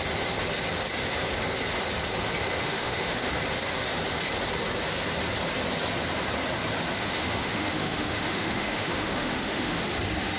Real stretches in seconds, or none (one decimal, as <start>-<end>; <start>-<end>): 0.0-2.5; 3.3-6.9; 9.8-10.4